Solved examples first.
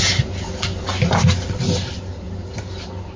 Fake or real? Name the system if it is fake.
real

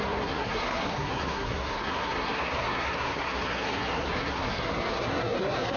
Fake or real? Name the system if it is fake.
fake, codec, SNAC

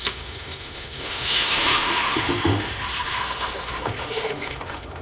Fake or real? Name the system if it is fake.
fake, autoencoder, DAC-VAE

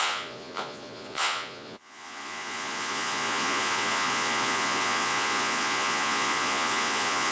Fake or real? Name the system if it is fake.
fake, vocoder, Vocos